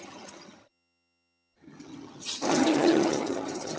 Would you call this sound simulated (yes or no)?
yes